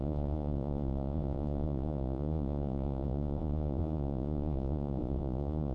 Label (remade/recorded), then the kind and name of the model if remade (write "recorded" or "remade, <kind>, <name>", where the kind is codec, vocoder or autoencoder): remade, vocoder, Vocos